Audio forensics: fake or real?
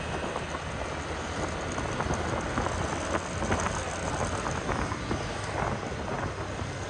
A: real